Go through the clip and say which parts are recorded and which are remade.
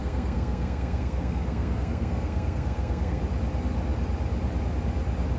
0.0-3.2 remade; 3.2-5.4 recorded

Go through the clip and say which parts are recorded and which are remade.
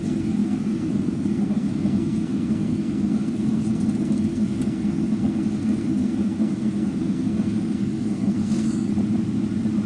0.0-8.9 remade; 8.9-9.9 recorded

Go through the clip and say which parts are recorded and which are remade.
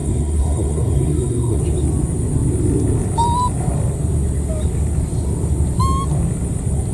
0.0-1.6 remade; 1.6-6.9 recorded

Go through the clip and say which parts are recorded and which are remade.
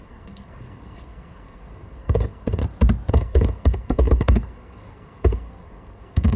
0.0-2.6 remade; 2.6-3.1 recorded; 3.1-6.4 remade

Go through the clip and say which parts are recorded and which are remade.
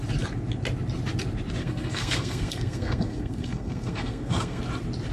0.0-1.6 recorded; 1.6-4.6 remade; 4.6-5.1 recorded